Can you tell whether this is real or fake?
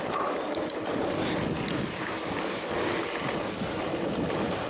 real